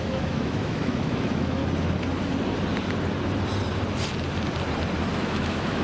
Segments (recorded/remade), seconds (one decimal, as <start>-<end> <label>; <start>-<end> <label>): 0.0-1.6 remade; 1.6-5.1 recorded; 5.1-5.8 remade